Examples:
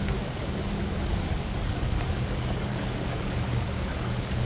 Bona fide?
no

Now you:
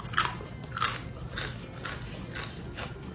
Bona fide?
yes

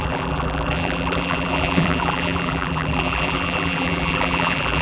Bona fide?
no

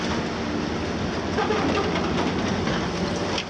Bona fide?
yes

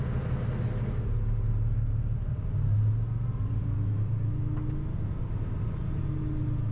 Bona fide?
yes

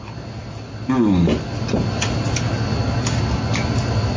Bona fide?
yes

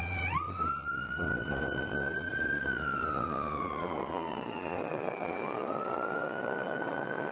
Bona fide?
no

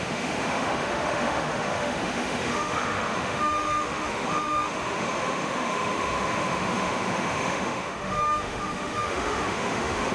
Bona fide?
no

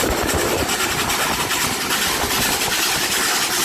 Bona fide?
yes